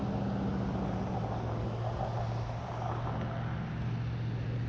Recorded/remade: recorded